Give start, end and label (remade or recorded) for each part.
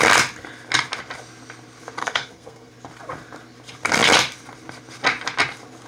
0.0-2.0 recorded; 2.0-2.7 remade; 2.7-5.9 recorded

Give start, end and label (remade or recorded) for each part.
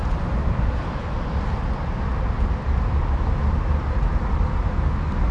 0.0-5.3 recorded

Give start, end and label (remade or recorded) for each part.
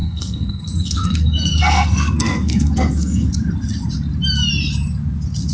0.0-3.3 remade; 3.3-5.5 recorded